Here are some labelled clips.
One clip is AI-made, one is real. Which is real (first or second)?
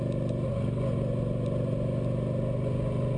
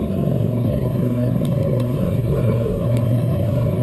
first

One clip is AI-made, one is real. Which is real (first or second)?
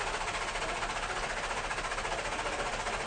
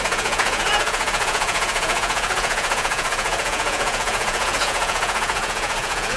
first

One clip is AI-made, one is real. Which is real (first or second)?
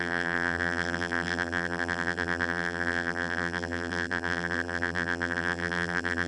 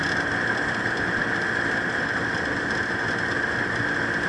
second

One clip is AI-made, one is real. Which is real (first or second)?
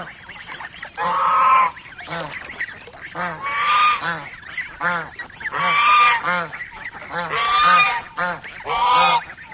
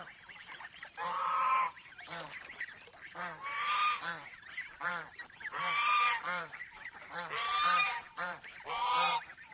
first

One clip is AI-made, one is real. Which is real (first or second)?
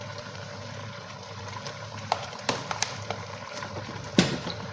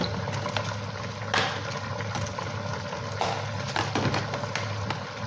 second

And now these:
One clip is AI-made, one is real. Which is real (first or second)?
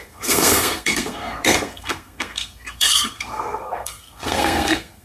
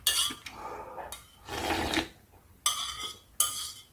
second